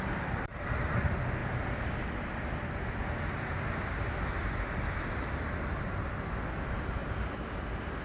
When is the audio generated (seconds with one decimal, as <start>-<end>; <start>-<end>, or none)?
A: none